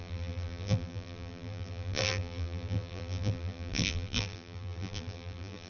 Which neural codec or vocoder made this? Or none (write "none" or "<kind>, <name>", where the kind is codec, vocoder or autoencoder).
vocoder, BigVGAN v2